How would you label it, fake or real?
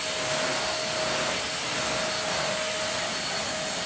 real